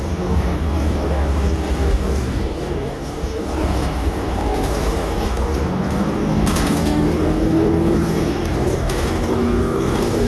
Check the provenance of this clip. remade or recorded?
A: remade